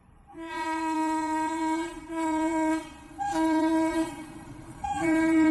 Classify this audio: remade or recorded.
remade